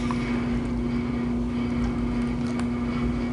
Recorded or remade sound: recorded